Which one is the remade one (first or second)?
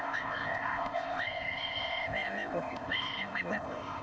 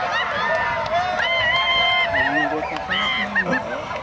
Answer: first